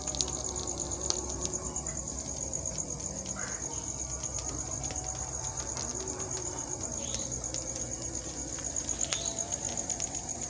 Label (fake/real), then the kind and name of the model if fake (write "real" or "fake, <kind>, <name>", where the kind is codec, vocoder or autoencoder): real